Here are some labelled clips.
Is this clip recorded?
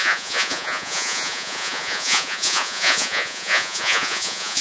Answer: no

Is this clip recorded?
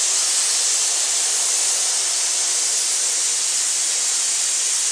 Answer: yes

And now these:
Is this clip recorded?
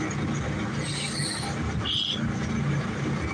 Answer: yes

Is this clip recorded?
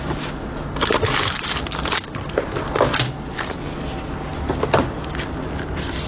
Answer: yes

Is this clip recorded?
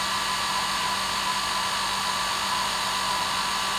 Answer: yes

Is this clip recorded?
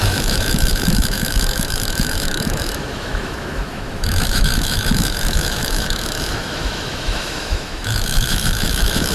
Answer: no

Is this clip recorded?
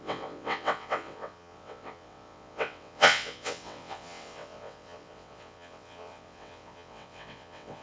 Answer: no